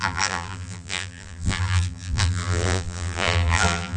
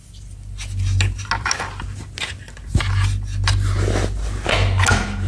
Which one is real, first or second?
second